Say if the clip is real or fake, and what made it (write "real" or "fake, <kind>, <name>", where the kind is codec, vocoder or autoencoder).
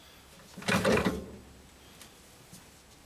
real